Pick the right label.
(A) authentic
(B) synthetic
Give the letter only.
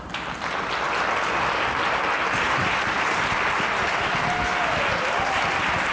A